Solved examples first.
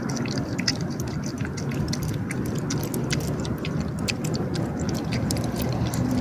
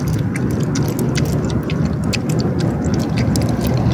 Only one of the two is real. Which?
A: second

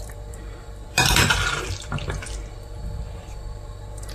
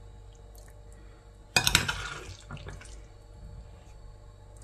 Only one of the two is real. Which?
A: second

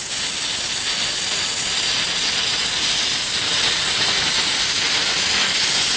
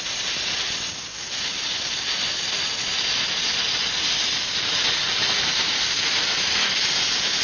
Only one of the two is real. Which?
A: first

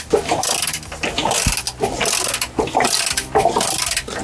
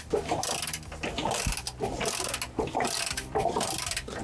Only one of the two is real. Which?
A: first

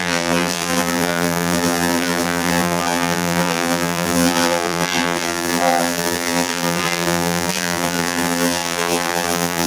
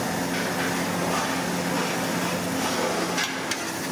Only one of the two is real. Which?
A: second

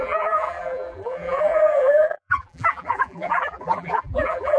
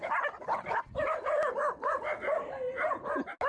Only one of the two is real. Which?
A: second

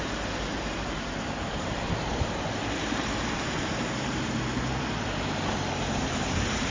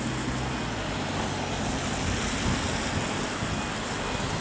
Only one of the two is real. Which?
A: second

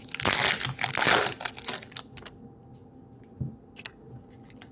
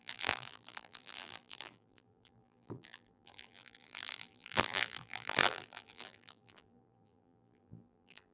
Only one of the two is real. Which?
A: first